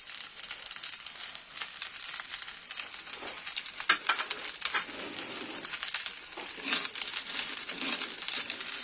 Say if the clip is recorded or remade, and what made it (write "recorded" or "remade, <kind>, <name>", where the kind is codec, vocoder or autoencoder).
recorded